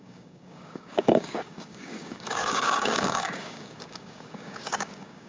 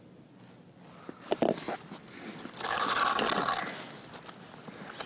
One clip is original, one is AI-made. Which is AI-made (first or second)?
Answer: first